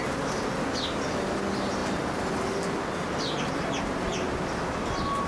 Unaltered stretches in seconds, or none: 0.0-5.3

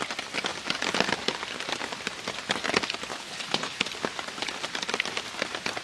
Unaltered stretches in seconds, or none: 0.0-3.1; 3.8-5.8

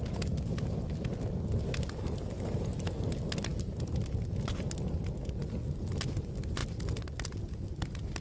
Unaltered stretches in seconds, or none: 0.0-8.2

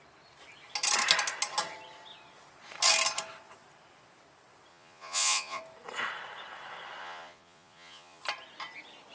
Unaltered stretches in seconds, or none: 0.0-4.7; 5.6-7.0; 8.2-9.1